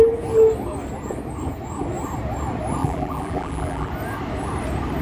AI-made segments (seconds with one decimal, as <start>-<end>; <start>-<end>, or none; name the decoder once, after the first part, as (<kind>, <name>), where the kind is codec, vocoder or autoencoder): 2.8-3.9 (vocoder, BigVGAN v2)